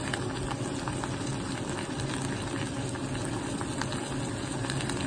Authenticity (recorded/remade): recorded